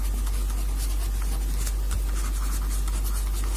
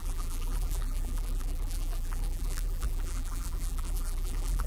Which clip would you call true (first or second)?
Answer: first